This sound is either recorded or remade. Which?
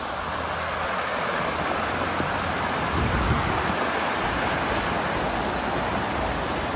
recorded